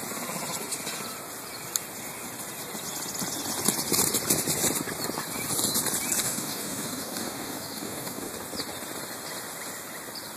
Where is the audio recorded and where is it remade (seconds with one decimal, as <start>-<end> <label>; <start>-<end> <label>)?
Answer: 0.0-6.2 recorded; 6.2-8.3 remade; 8.3-10.4 recorded